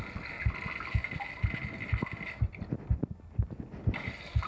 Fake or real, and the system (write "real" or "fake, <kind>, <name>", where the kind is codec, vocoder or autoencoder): real